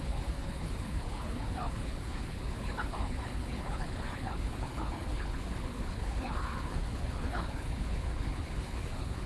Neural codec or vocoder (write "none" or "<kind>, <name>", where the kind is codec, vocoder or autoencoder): codec, HILCodec